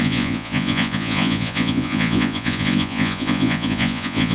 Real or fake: fake